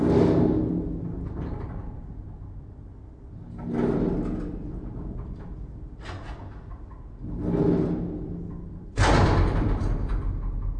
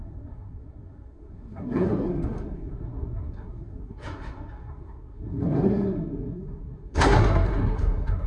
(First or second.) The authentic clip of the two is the first